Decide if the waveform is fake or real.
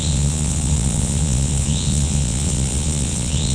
fake